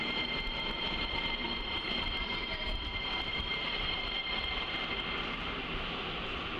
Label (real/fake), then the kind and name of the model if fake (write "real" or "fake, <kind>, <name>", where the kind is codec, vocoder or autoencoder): fake, vocoder, BigVGAN v2